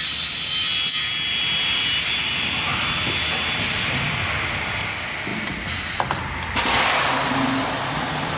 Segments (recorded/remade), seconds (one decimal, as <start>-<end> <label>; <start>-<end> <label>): 0.0-8.4 recorded